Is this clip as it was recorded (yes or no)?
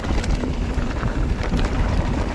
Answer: no